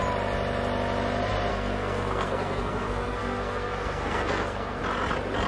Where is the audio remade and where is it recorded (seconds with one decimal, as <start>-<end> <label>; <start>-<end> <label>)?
0.0-1.5 recorded; 1.5-4.8 remade; 4.8-5.5 recorded